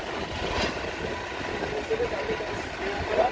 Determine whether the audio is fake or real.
real